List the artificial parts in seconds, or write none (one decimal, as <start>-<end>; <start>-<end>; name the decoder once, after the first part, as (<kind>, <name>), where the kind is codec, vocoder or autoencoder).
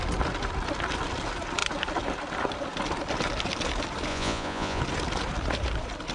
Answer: 4.1-4.8 (vocoder, Vocos)